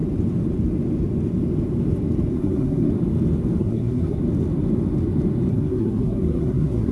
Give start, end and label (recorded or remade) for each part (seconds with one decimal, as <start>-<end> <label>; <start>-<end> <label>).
0.0-2.3 recorded; 2.3-2.9 remade; 2.9-3.6 recorded; 3.6-4.2 remade; 4.2-5.5 recorded; 5.5-6.9 remade